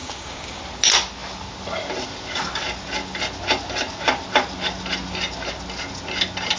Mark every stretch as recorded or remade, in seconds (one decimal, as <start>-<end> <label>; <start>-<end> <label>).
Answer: 0.0-0.6 remade; 0.6-6.6 recorded